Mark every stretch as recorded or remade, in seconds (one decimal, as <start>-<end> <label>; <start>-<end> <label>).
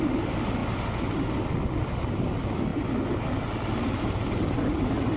0.0-0.6 remade; 0.6-1.7 recorded; 1.7-2.7 remade; 2.7-3.7 recorded; 3.7-5.2 remade